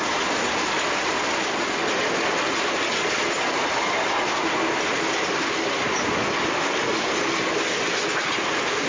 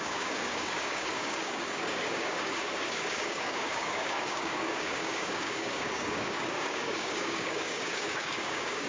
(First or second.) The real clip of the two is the first